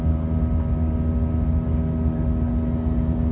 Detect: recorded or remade recorded